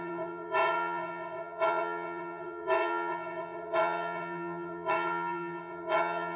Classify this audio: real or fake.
fake